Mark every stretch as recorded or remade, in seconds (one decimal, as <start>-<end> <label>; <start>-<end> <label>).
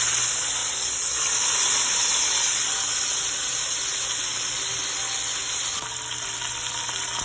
0.0-7.2 recorded